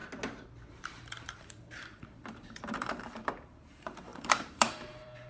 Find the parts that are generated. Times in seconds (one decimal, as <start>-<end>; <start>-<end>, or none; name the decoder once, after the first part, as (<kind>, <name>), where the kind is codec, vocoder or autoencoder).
0.7-5.3 (vocoder, BigVGAN v2)